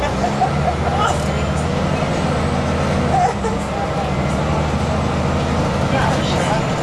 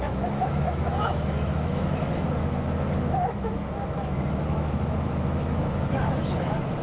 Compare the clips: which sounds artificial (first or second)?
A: second